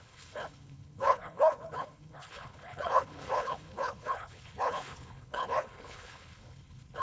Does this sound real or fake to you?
fake